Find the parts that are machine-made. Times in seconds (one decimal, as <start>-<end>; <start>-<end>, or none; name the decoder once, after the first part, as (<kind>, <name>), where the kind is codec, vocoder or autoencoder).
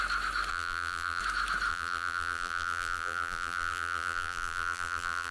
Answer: 0.5-1.2 (vocoder, BigVGAN v2); 1.7-5.3